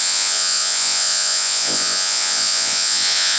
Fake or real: fake